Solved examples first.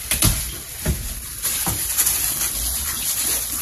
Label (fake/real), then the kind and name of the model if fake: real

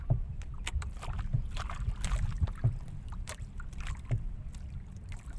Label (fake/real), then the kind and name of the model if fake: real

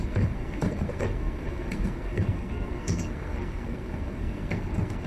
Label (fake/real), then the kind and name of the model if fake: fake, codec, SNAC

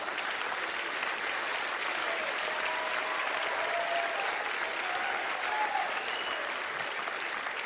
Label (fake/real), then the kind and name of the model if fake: real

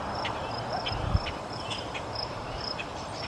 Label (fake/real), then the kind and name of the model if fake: fake, vocoder, BigVGAN v2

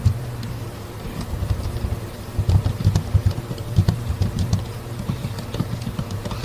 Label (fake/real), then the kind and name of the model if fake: fake, vocoder, BigVGAN v2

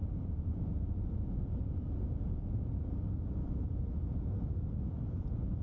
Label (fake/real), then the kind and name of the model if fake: fake, vocoder, Vocos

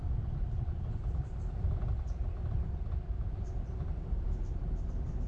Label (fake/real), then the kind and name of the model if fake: fake, vocoder, BigVGAN v2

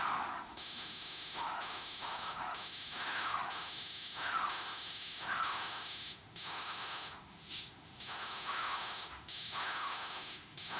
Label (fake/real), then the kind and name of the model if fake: fake, autoencoder, DAC-VAE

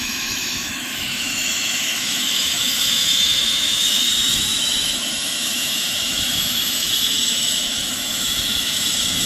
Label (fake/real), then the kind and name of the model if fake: fake, autoencoder, DAC-VAE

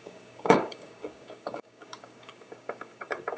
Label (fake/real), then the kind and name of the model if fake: fake, codec, DAC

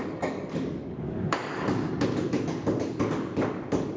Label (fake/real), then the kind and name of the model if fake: fake, codec, DAC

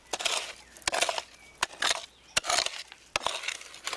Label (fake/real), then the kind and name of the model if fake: real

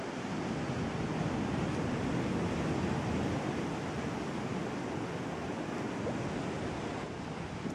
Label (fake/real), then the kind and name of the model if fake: real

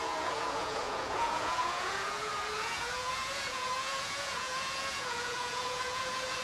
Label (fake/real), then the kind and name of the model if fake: fake, vocoder, Vocos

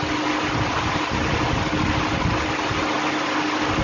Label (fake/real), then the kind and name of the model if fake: real